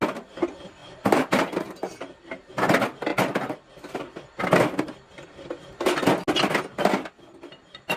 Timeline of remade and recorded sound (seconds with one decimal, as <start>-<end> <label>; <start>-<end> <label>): 0.0-0.8 recorded; 0.8-2.5 remade; 2.5-3.1 recorded; 3.1-3.7 remade; 3.7-8.0 recorded